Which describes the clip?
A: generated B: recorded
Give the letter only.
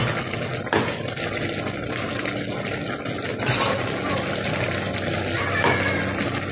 B